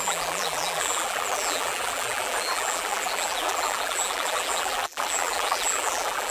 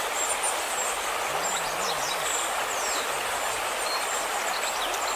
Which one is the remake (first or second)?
first